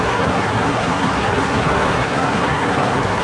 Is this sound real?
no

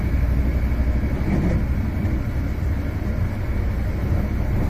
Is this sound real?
yes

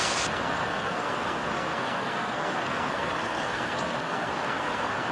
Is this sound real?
no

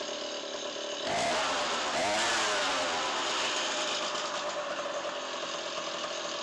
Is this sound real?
yes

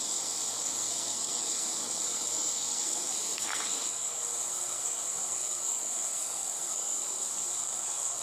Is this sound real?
no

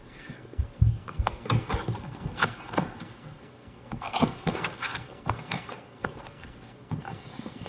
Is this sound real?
no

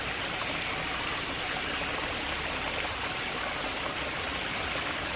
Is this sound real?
yes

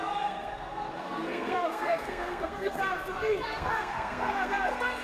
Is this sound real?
no